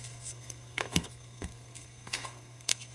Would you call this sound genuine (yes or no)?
no